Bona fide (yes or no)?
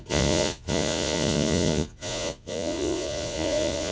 no